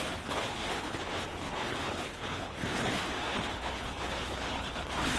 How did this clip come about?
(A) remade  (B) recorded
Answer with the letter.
A